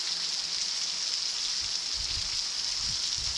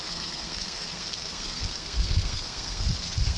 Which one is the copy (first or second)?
second